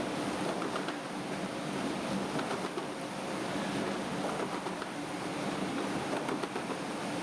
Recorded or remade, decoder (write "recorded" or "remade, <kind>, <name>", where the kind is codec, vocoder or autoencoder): recorded